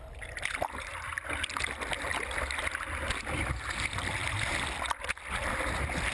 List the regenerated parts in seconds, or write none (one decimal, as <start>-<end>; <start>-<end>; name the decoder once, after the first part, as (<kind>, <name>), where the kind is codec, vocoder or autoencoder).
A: none